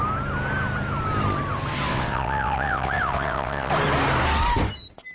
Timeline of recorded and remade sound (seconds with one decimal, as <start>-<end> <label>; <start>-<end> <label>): 0.0-1.9 recorded; 1.9-3.7 remade; 3.7-5.1 recorded